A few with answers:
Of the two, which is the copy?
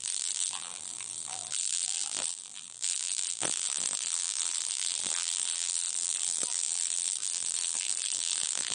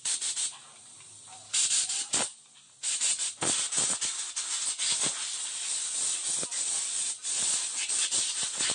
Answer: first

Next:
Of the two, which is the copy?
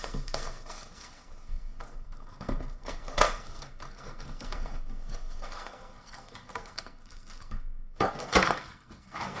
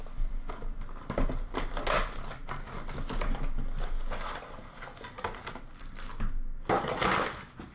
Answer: first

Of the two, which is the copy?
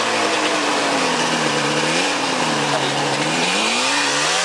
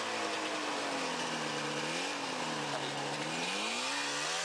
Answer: first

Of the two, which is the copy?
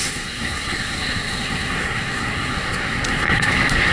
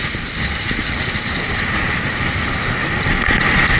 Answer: first